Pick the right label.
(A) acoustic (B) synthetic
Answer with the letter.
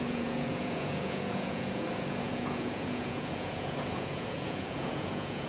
B